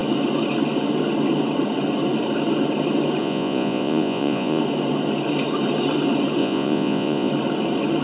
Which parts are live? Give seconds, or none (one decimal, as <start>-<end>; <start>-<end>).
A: 0.0-3.2; 4.6-6.4; 7.3-8.0